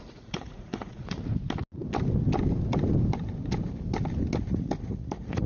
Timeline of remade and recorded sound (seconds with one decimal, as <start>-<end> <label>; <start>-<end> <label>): 0.0-1.2 remade; 1.2-4.5 recorded; 4.5-5.5 remade